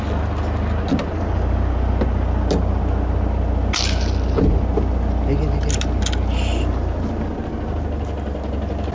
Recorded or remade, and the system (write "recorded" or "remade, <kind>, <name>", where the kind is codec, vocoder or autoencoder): recorded